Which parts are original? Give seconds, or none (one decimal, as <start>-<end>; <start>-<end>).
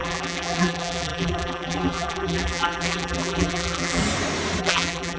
4.0-4.6